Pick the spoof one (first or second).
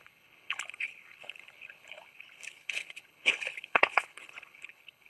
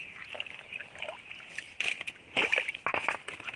first